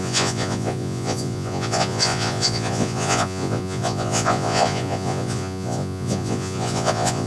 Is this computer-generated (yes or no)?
yes